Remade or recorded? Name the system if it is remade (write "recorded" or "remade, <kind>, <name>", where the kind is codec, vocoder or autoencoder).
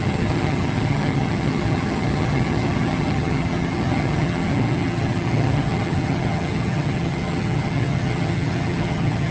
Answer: remade, vocoder, HiFi-GAN